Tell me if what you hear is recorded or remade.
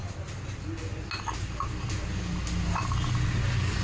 recorded